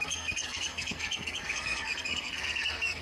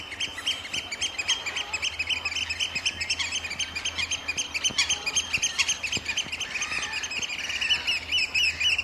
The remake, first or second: first